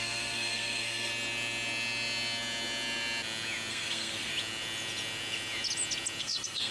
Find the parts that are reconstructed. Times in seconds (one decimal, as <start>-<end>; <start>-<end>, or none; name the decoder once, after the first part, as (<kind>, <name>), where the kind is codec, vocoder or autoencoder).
0.0-1.1 (codec, SNAC); 3.7-4.3; 6.2-6.7